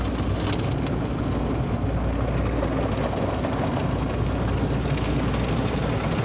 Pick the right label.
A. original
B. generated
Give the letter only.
A